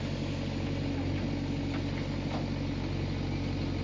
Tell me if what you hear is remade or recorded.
recorded